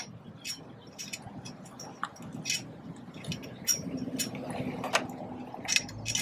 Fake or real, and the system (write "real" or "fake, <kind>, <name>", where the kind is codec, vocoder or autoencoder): real